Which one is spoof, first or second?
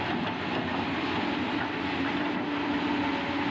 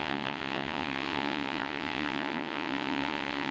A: second